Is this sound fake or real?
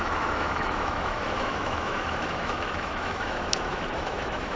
fake